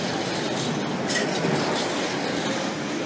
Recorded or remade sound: recorded